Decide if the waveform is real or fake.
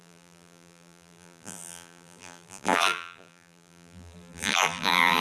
fake